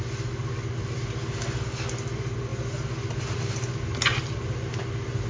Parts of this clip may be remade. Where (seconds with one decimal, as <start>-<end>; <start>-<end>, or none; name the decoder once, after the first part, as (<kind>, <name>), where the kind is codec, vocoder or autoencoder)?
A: none